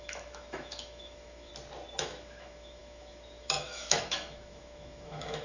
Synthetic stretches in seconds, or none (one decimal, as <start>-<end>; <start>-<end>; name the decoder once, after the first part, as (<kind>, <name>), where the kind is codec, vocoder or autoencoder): 0.0-1.5 (autoencoder, DAC-VAE); 2.0-5.4